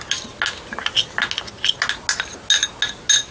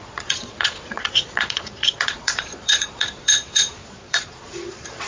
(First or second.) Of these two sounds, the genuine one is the first